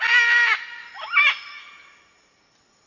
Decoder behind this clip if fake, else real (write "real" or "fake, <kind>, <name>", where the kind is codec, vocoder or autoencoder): real